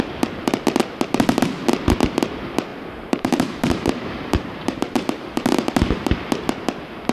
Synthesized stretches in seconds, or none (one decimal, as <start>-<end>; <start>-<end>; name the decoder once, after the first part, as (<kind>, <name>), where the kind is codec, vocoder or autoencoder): 2.7-6.1 (vocoder, BigVGAN v2)